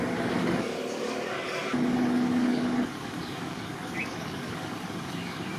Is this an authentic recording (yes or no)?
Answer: no